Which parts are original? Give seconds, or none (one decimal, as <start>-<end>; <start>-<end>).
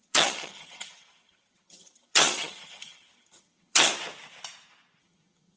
3.9-5.0